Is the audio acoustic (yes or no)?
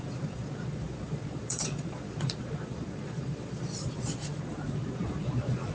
no